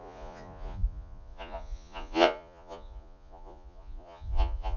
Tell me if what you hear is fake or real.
fake